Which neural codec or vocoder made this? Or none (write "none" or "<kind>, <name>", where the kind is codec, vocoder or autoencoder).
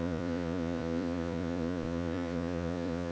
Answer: vocoder, Vocos